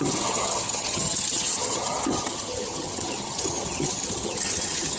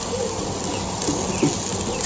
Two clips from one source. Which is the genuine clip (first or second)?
second